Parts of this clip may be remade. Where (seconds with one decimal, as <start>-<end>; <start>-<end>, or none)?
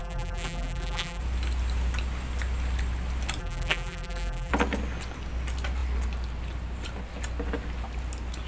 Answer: 0.0-1.2; 3.4-4.5